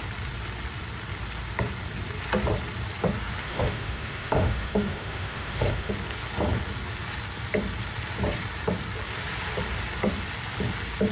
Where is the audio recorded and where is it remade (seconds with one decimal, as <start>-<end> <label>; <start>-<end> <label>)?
0.0-3.4 recorded; 3.4-5.9 remade; 5.9-11.1 recorded